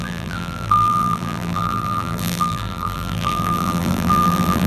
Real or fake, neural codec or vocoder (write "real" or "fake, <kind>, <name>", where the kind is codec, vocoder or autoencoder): fake, vocoder, BigVGAN v2